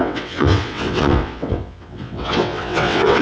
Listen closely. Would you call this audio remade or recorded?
remade